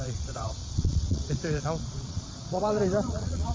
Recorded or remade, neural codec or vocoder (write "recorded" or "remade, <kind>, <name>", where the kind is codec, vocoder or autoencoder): remade, vocoder, Vocos